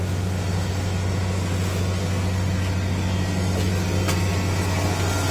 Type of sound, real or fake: real